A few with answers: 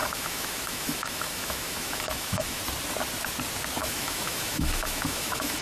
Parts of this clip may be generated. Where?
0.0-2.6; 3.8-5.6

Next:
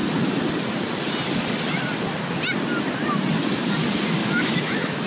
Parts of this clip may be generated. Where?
4.2-5.1